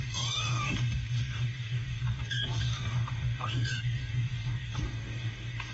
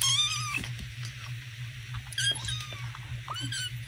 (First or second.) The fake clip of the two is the first